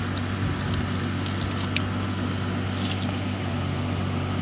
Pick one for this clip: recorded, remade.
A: recorded